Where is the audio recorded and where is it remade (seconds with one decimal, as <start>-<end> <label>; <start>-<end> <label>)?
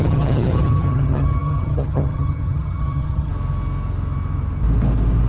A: 0.0-3.3 remade; 3.3-5.3 recorded